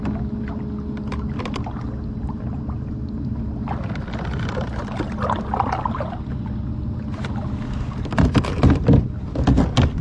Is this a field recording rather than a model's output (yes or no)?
yes